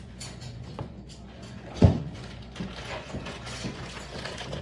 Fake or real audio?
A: fake